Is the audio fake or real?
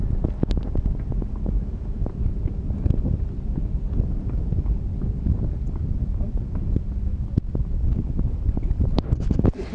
fake